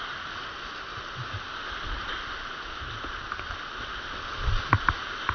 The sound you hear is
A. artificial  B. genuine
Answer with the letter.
B